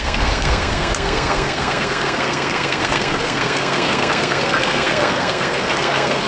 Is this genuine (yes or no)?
no